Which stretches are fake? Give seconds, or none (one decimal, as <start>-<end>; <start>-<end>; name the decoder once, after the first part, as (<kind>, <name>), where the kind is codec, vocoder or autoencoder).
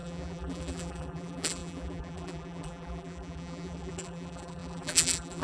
0.0-5.4 (vocoder, BigVGAN v2)